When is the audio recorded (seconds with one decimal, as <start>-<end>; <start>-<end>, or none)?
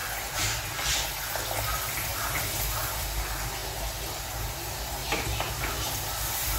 0.6-5.0; 5.7-6.6